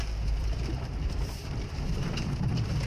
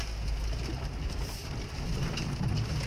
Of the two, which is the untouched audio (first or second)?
second